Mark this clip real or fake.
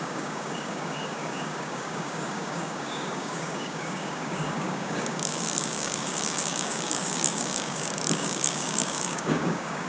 fake